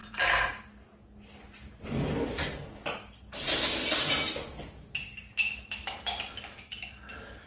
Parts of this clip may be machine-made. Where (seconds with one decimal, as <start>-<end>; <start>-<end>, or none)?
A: none